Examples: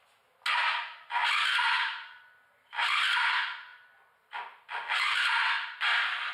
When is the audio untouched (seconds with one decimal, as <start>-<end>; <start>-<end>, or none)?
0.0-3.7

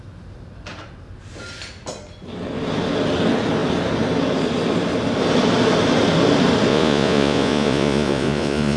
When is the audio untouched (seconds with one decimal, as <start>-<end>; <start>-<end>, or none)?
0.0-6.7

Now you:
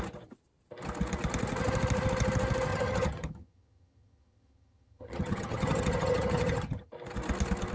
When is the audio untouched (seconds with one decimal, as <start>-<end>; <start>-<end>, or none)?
0.0-2.7; 6.9-7.7